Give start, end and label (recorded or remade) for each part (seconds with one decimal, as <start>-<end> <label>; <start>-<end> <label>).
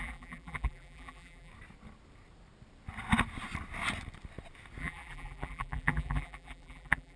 0.0-1.5 remade; 1.5-4.8 recorded; 4.8-7.2 remade